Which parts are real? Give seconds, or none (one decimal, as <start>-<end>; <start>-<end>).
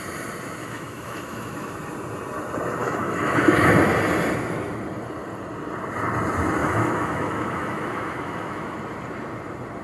0.0-0.6; 1.7-2.8; 3.7-6.6; 8.8-9.8